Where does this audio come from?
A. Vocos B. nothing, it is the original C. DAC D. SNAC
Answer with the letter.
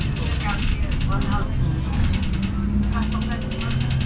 B